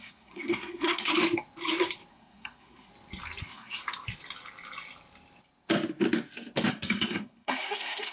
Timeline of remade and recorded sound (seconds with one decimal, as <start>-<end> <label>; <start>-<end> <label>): 0.0-1.1 remade; 1.1-2.1 recorded; 2.1-2.9 remade; 2.9-3.4 recorded; 3.4-3.8 remade; 3.8-6.7 recorded; 6.7-8.1 remade